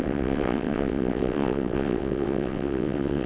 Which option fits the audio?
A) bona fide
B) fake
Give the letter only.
B